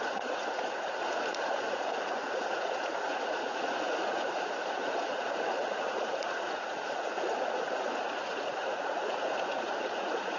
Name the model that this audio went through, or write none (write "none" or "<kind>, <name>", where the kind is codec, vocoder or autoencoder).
vocoder, Vocos